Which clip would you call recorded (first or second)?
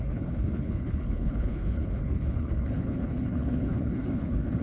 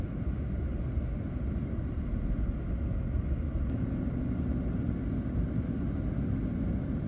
second